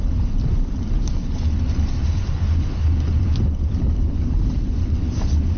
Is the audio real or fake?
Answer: fake